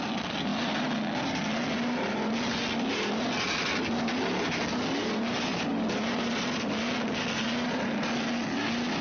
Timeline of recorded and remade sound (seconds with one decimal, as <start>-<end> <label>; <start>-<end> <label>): 0.0-9.0 recorded

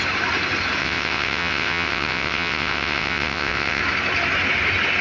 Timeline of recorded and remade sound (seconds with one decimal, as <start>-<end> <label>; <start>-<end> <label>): 0.0-0.8 recorded; 0.8-3.8 remade; 3.8-5.0 recorded

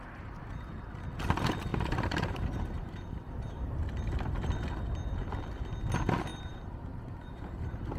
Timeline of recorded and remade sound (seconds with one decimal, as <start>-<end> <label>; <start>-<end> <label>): 0.0-1.7 recorded; 1.7-3.3 remade; 3.3-6.3 recorded; 6.3-8.0 remade